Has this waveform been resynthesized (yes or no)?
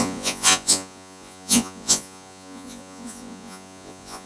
yes